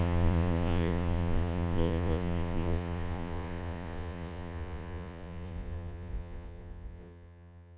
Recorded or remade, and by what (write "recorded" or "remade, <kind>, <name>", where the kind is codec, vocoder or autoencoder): remade, vocoder, Vocos